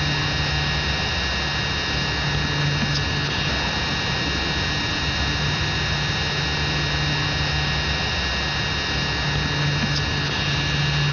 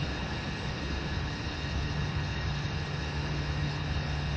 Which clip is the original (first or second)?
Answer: first